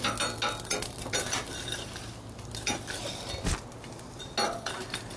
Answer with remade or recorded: recorded